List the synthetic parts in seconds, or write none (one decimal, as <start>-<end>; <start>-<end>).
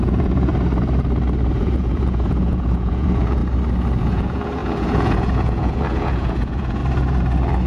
0.0-0.5; 1.5-3.4; 4.0-6.8